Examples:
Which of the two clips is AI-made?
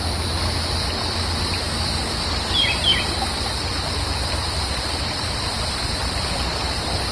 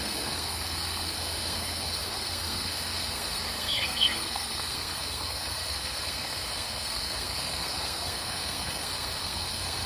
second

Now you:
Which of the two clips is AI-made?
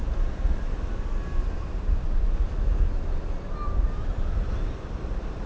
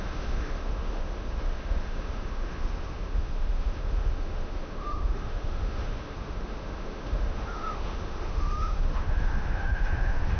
second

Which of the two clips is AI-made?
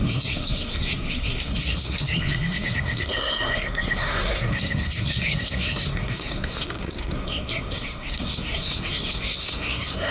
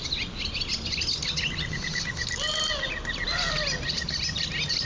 first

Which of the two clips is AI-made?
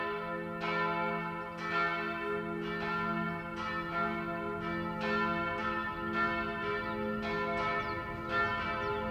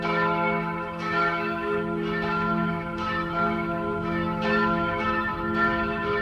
second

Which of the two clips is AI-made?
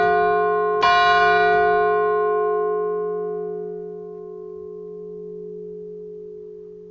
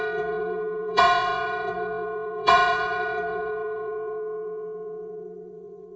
second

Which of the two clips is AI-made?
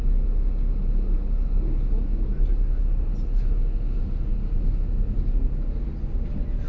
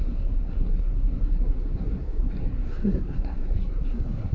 second